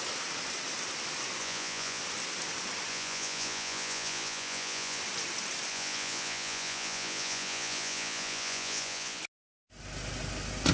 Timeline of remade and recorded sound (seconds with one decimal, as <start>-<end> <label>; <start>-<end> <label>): 0.0-1.4 recorded; 1.4-2.0 remade; 2.0-2.9 recorded; 2.9-5.0 remade; 5.0-5.7 recorded; 5.7-9.2 remade; 9.2-10.7 recorded